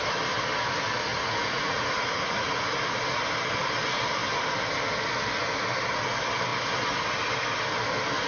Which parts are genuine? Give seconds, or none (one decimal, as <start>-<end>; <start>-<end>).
0.0-1.1; 3.0-8.3